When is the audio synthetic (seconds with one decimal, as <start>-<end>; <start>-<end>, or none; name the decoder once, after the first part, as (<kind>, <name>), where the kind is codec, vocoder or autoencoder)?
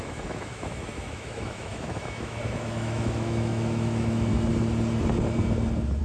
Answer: 0.0-4.3 (autoencoder, DAC-VAE)